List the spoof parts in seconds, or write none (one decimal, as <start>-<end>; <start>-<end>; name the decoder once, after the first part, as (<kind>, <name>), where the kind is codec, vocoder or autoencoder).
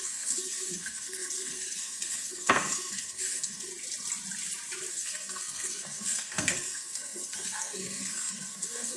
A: 0.0-3.7 (codec, SNAC); 4.9-9.0